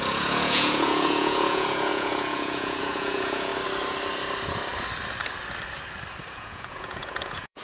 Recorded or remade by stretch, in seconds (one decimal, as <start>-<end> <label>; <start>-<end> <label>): 0.0-3.5 remade; 3.5-6.3 recorded; 6.3-7.6 remade